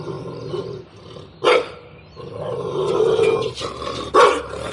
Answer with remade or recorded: recorded